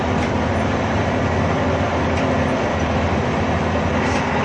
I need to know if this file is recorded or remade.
remade